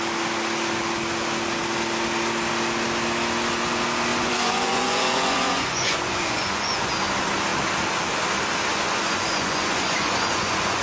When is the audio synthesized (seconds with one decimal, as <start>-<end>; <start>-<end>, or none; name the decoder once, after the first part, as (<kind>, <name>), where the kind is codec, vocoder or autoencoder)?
4.1-6.9 (vocoder, Vocos); 8.7-10.8